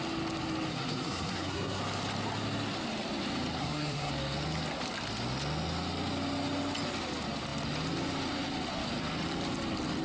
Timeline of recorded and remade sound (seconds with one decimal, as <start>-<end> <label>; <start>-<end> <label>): 0.0-0.7 recorded; 0.7-1.8 remade; 1.8-3.6 recorded; 3.6-4.1 remade; 4.1-10.0 recorded